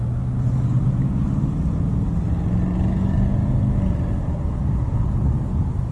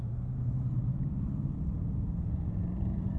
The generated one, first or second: second